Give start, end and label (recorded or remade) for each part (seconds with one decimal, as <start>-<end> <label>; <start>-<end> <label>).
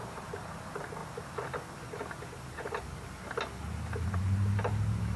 0.0-0.6 remade; 0.6-5.2 recorded